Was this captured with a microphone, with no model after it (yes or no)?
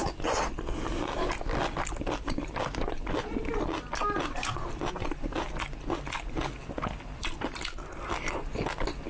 yes